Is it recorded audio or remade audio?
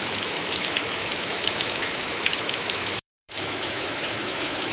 remade